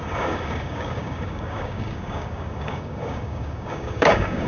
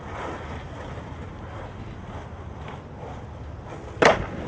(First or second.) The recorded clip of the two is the second